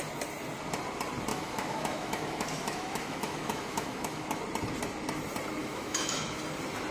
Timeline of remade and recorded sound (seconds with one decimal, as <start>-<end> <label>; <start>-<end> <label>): 0.0-1.3 recorded; 1.3-4.4 remade; 4.4-5.6 recorded; 5.6-6.4 remade; 6.4-6.9 recorded